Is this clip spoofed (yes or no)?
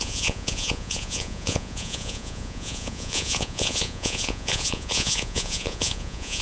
yes